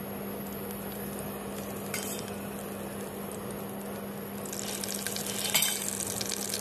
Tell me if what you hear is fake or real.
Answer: real